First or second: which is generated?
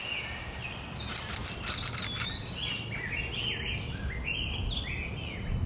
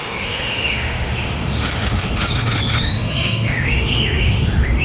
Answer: second